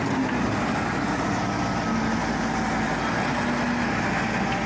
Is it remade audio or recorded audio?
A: recorded